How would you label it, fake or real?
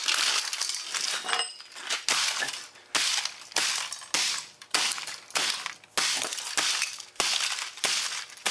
real